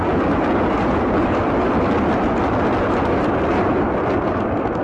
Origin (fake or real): real